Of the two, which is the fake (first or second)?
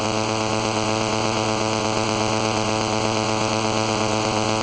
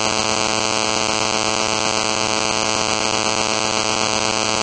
first